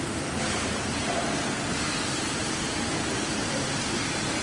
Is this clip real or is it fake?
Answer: real